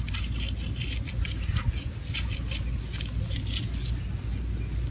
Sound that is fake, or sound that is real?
real